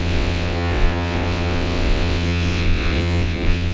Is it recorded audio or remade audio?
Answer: remade